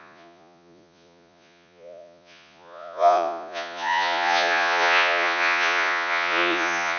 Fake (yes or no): yes